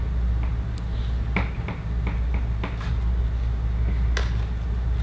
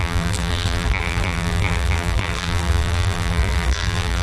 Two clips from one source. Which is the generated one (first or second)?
second